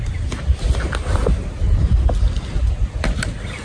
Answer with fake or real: real